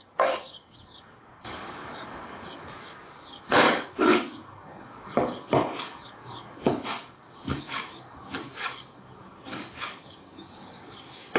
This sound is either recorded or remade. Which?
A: remade